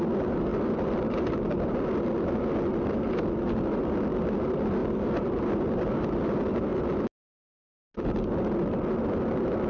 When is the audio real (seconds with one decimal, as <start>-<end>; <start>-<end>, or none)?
0.0-0.5; 1.7-4.8; 5.6-6.7; 7.4-9.7